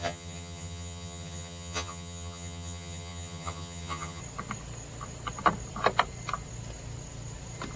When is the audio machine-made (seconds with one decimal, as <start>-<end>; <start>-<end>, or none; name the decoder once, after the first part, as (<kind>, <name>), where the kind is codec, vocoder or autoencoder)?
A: 0.0-4.2 (vocoder, HiFi-GAN)